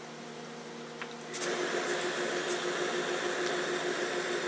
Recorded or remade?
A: recorded